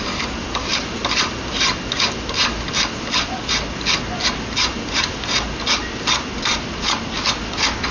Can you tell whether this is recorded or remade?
recorded